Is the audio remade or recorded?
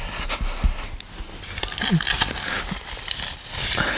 recorded